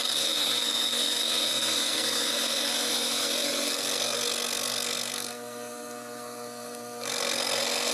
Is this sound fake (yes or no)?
yes